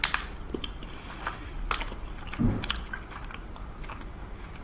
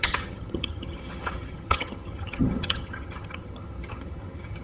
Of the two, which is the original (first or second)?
first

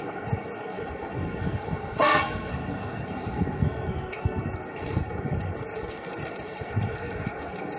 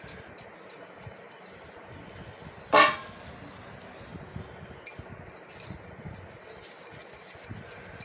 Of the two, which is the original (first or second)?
second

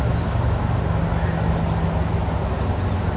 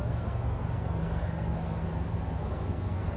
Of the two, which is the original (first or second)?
first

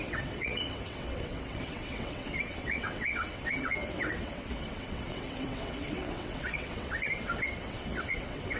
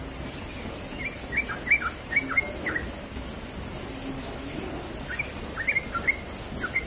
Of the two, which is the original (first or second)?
second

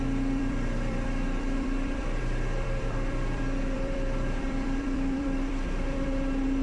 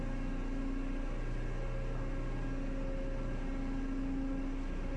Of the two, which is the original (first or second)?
second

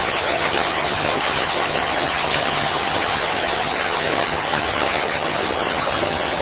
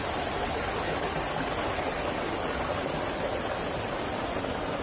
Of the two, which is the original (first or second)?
second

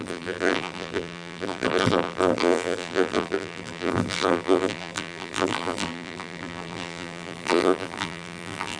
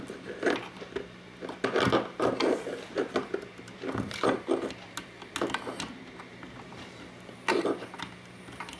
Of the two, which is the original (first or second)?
second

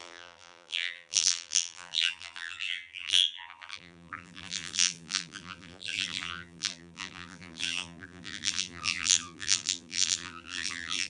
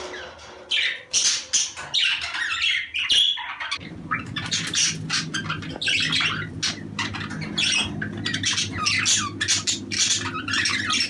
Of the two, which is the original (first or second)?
second